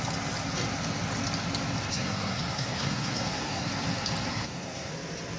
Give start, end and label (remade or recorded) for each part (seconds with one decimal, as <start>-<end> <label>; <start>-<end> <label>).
0.0-1.9 recorded; 1.9-3.7 remade; 3.7-4.3 recorded; 4.3-4.9 remade; 4.9-5.4 recorded